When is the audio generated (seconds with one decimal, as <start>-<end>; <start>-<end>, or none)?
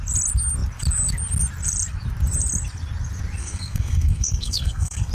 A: 3.4-5.1